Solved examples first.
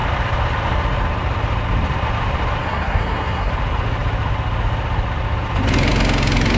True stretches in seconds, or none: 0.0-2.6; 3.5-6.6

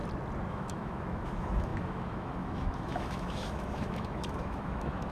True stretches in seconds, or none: 0.0-0.5

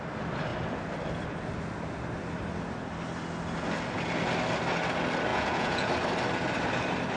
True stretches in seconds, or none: 0.0-5.3; 5.9-7.2

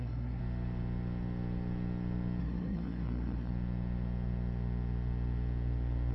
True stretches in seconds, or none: 0.4-2.4; 3.5-6.1

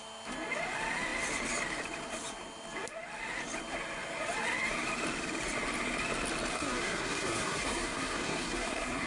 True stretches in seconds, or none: 0.0-6.5